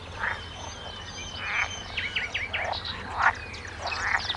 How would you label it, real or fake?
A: real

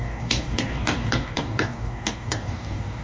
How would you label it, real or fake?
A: fake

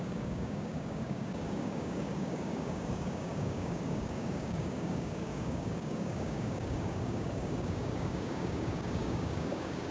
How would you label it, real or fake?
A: fake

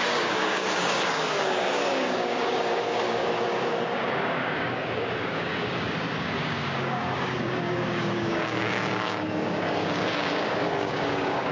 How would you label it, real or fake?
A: fake